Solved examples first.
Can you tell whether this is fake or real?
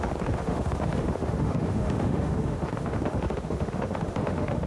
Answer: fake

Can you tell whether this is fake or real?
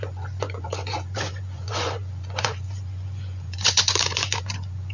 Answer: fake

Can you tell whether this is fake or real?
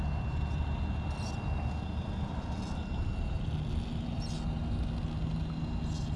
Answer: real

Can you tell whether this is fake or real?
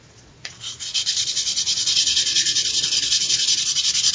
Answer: fake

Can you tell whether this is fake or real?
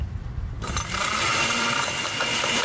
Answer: real